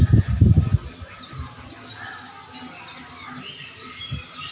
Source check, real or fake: real